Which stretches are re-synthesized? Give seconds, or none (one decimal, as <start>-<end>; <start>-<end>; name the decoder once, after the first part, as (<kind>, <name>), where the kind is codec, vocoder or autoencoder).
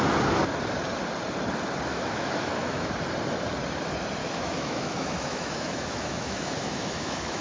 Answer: 1.9-2.9 (autoencoder, DAC-VAE); 4.2-7.4